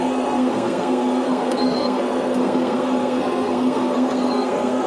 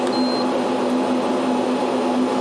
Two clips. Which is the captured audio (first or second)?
second